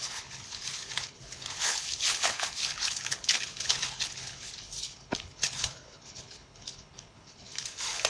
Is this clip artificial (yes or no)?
yes